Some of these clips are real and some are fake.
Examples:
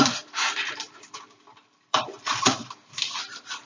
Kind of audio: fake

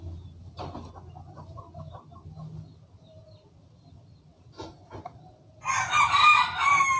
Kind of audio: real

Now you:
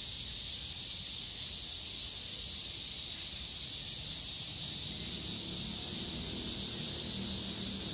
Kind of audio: real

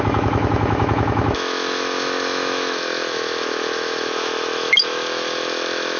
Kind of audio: fake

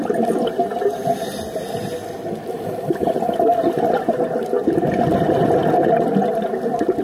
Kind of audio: real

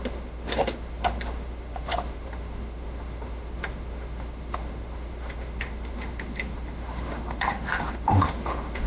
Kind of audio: fake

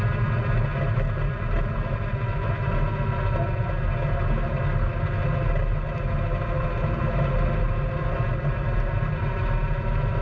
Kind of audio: real